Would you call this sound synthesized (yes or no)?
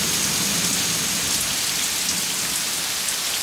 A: no